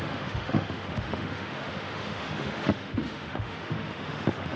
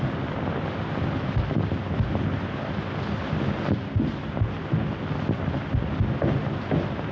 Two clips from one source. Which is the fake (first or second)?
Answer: first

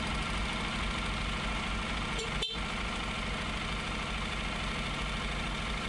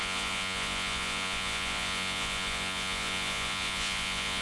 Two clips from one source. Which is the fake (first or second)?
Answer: second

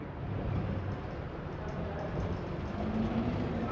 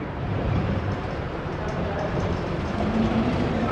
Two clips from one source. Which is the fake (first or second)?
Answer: second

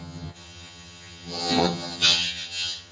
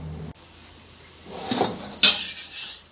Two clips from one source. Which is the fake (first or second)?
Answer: first